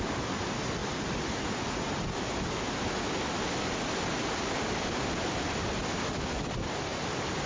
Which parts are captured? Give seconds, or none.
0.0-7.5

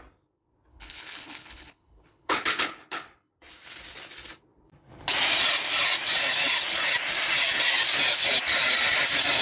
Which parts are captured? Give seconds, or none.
0.0-0.7; 3.3-9.4

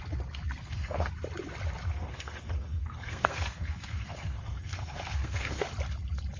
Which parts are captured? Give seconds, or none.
0.0-0.6; 1.1-1.9; 5.7-6.4

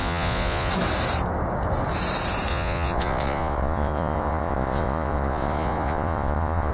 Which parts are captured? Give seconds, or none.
0.7-2.5

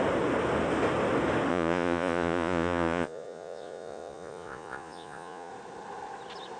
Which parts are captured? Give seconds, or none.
0.0-1.5; 5.5-6.6